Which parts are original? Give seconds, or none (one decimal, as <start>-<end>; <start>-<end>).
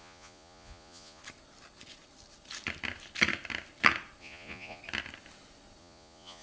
1.2-4.2; 4.8-5.8